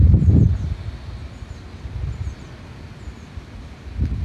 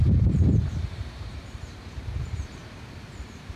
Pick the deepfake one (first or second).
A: second